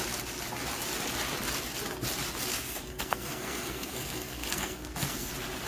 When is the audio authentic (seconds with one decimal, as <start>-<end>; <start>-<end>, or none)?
0.0-2.5; 5.3-5.7

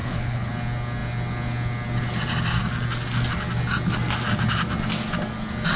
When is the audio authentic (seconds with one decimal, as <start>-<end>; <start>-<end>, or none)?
0.5-5.8

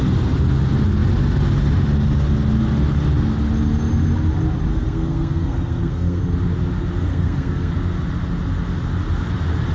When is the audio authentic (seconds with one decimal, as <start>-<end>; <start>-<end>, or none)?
0.0-4.7; 6.2-7.1; 7.7-9.7

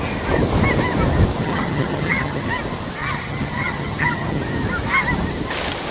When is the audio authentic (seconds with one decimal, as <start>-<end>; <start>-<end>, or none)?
0.0-1.4; 2.5-3.0; 4.4-5.9